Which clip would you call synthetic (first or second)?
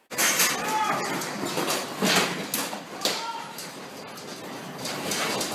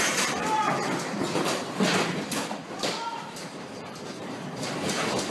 second